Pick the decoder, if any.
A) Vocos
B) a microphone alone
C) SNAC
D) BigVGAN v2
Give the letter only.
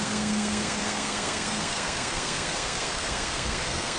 C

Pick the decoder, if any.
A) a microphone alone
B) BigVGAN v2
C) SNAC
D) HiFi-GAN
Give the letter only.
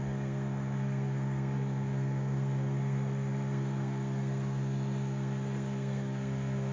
C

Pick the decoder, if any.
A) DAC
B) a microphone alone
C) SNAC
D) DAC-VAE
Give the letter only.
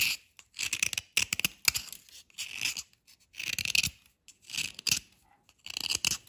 B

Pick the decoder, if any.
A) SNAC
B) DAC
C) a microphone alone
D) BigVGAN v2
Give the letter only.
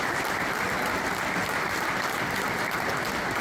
C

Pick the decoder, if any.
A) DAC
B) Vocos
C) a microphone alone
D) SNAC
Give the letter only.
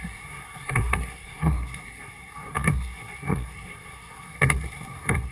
D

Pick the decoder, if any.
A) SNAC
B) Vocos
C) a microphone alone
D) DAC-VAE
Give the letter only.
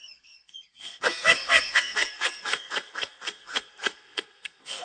A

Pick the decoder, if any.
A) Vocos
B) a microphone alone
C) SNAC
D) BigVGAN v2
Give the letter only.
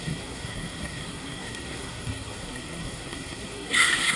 C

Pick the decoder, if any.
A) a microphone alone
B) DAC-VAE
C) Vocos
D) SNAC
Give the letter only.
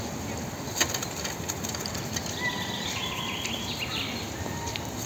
A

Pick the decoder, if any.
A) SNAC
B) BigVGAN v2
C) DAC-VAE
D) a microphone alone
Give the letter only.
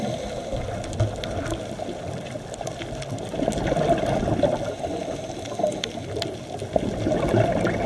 D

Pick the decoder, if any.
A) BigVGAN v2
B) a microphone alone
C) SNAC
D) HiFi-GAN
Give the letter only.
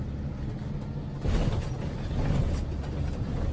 B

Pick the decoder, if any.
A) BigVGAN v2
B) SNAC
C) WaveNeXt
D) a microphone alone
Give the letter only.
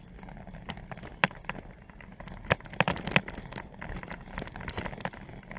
D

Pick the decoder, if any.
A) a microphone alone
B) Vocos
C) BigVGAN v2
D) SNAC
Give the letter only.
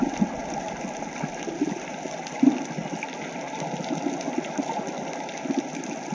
A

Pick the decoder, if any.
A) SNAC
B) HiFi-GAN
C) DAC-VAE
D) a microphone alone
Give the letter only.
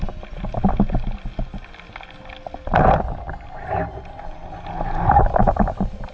D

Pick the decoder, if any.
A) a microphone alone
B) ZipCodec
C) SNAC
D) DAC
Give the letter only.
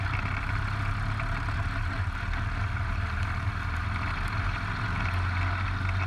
A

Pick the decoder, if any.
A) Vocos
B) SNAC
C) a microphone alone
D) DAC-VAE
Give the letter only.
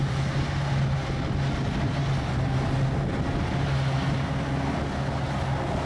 C